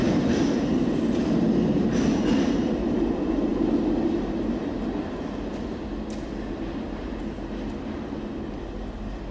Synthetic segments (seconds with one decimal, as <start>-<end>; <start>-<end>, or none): none